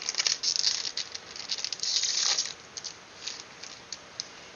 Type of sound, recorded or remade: recorded